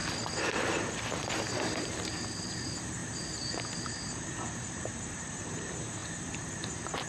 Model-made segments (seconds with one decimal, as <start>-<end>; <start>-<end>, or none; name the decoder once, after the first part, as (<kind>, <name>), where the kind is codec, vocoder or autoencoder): 1.6-7.1 (vocoder, BigVGAN v2)